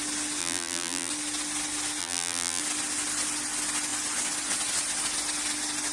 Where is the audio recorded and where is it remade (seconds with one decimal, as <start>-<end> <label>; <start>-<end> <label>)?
0.0-0.4 recorded; 0.4-1.1 remade; 1.1-2.0 recorded; 2.0-2.6 remade; 2.6-5.9 recorded